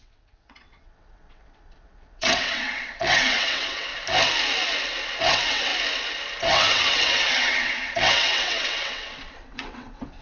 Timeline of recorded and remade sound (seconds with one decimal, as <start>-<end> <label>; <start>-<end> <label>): 0.0-3.9 remade; 3.9-5.2 recorded; 5.2-5.7 remade; 5.7-6.4 recorded; 6.4-10.2 remade